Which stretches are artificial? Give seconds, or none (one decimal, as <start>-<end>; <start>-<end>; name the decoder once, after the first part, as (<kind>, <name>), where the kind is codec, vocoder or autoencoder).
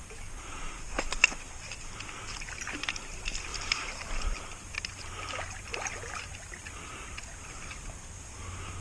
3.5-4.0 (vocoder, BigVGAN v2)